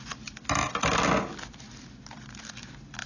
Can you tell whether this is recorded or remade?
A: recorded